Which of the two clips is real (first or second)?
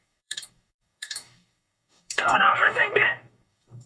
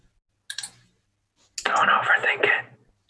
second